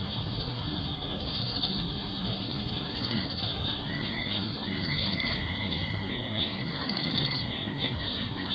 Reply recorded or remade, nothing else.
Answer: remade